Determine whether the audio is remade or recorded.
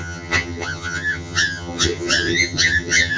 remade